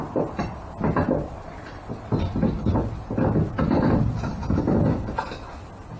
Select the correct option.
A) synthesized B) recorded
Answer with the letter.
B